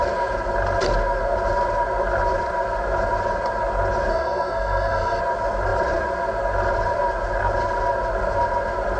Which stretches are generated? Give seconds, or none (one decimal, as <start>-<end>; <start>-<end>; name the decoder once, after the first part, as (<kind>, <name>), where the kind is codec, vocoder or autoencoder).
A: 4.1-5.2 (codec, SNAC)